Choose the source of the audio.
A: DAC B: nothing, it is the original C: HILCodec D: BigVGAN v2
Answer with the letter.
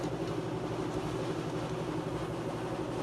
B